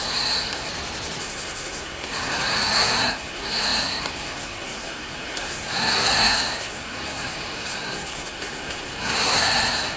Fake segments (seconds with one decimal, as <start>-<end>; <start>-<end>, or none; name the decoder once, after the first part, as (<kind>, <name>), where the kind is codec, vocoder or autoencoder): 0.0-0.7 (codec, SNAC); 1.2-10.0